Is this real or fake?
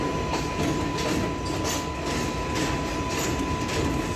real